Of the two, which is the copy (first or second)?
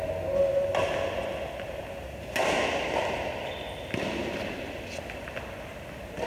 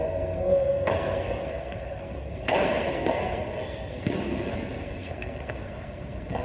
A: second